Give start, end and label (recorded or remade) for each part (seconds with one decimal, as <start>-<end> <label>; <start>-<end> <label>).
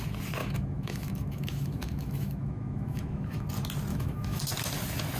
0.0-0.4 recorded; 0.4-3.5 remade; 3.5-3.9 recorded; 3.9-4.4 remade; 4.4-5.2 recorded